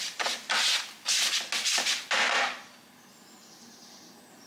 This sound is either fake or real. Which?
real